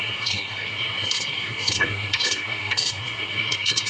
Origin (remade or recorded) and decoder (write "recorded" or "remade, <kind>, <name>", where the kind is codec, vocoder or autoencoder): remade, codec, SNAC